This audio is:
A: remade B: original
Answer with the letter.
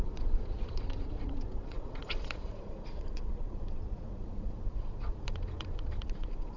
A